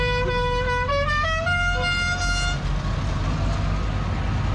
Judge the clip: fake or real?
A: real